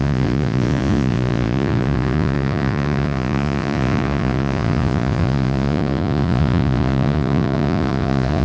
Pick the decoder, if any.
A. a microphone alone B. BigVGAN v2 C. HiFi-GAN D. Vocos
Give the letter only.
D